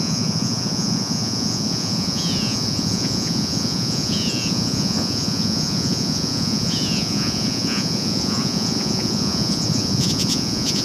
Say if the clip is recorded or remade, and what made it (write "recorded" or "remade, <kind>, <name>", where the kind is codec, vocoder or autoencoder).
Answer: remade, vocoder, Vocos